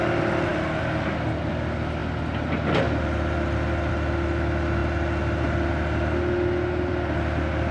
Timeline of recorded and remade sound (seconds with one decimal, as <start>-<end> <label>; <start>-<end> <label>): 0.0-7.7 recorded